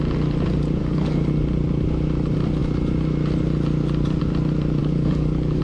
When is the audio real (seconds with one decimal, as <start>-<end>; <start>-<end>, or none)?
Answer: 0.0-0.8; 1.3-4.8